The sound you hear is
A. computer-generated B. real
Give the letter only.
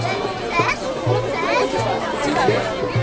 B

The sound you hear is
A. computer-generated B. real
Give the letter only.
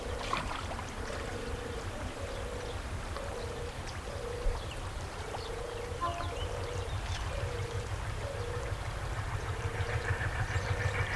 A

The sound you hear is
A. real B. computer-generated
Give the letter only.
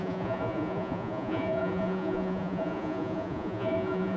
B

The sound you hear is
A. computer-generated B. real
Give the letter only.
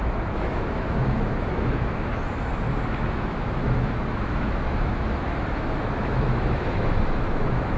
A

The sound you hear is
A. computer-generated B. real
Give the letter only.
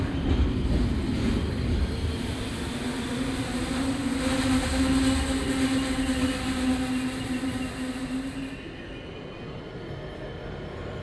B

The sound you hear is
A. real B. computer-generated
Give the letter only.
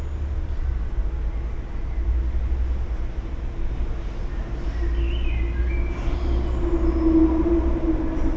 A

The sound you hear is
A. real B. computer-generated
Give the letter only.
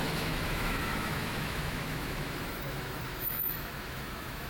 B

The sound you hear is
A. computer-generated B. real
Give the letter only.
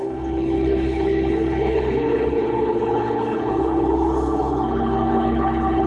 A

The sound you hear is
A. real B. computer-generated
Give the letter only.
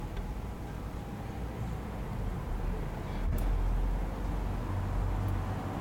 A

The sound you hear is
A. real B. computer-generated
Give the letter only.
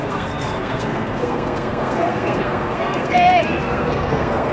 B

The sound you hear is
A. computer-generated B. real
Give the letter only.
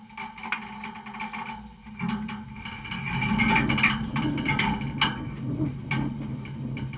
B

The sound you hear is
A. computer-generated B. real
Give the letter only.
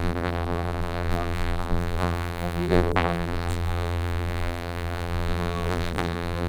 A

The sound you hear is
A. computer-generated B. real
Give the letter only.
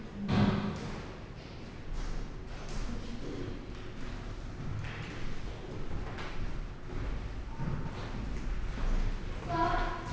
B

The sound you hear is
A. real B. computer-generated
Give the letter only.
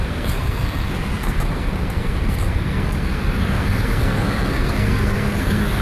B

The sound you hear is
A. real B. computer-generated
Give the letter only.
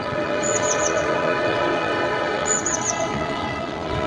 B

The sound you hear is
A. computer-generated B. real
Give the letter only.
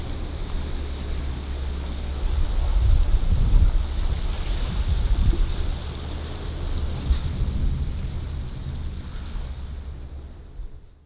B